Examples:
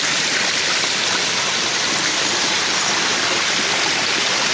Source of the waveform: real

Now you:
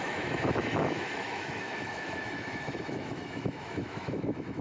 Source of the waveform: fake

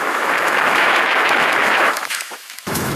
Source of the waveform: fake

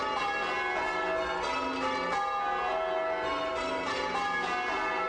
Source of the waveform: real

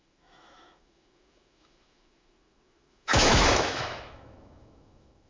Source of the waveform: fake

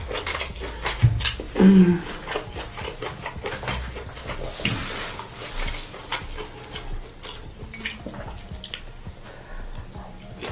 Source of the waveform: real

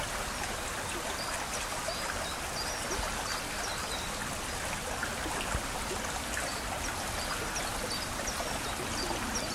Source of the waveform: real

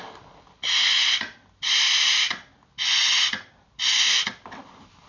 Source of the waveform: real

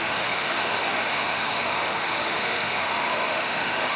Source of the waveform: fake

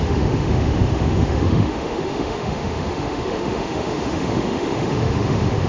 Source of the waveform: fake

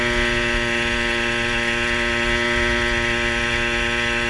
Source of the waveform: real